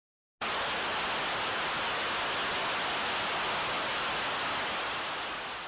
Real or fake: real